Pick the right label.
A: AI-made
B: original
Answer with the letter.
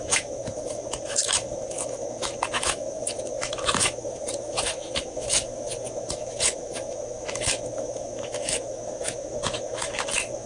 A